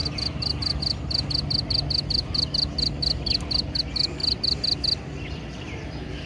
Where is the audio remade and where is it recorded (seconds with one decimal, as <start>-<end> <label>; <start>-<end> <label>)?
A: 0.0-4.2 recorded; 4.2-6.3 remade